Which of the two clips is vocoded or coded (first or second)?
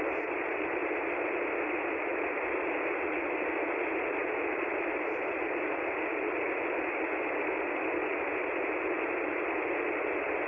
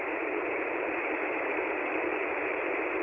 second